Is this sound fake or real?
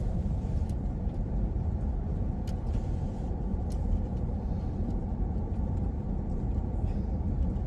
fake